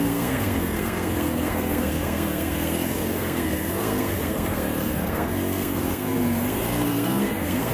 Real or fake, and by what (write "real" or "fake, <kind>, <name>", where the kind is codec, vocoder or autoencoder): fake, codec, SNAC